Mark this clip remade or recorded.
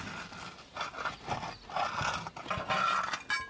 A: recorded